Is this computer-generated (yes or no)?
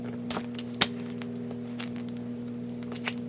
no